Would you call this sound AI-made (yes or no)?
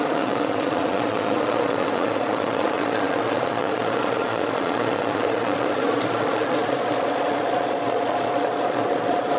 yes